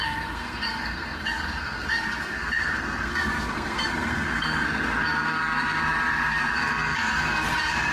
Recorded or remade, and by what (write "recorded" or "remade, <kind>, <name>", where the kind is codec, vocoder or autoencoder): remade, codec, SNAC